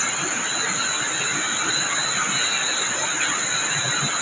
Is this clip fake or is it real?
real